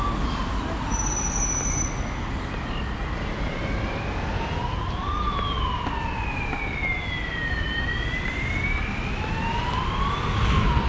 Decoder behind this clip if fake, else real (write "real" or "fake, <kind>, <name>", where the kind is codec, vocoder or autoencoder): real